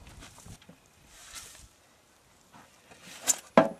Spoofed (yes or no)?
no